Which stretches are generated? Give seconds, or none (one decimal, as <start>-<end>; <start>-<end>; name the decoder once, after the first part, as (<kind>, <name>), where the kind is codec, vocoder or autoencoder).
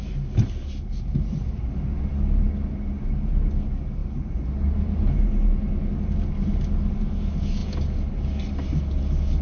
none